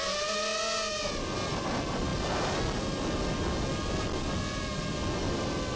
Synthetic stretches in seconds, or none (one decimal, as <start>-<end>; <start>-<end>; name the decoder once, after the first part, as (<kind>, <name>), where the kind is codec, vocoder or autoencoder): none